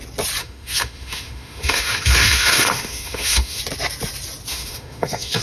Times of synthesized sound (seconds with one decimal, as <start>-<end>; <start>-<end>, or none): 0.4-3.6; 4.5-5.4